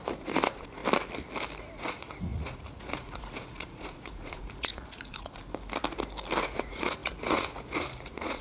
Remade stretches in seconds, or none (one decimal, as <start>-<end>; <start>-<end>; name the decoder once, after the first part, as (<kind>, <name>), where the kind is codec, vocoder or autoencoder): 0.0-0.8 (vocoder, Vocos); 1.6-5.4; 6.4-8.4